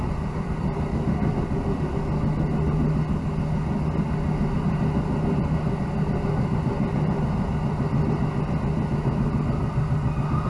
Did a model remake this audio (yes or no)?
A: no